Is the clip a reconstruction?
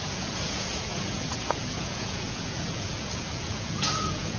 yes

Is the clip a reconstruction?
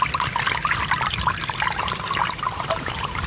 no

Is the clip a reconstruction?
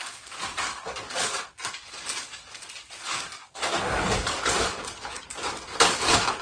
yes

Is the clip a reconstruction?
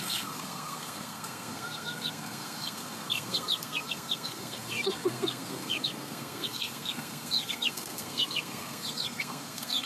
yes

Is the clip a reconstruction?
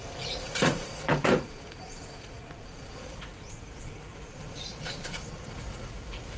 yes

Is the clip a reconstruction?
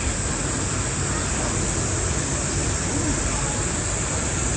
no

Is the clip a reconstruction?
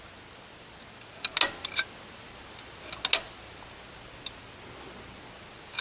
no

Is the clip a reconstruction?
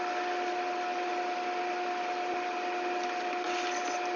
no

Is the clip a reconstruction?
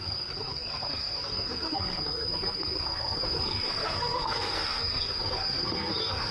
yes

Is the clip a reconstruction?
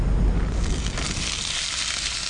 no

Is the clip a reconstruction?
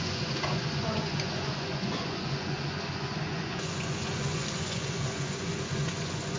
yes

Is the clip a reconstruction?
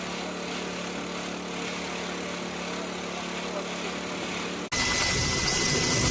no